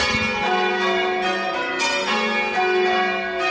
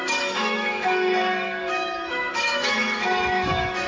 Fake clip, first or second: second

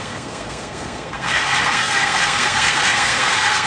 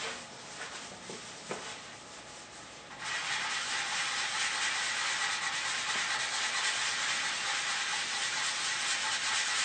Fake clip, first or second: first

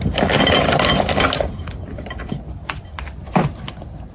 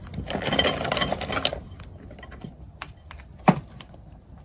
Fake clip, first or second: second